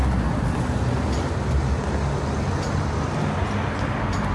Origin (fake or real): real